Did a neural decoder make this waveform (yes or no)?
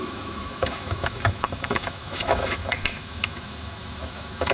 yes